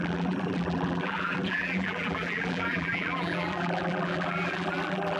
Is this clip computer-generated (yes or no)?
yes